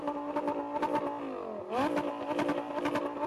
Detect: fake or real real